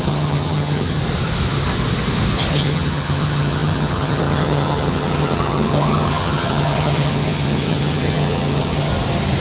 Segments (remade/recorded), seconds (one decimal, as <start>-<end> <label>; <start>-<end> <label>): 0.0-1.0 remade; 1.0-2.5 recorded; 2.5-8.9 remade; 8.9-9.4 recorded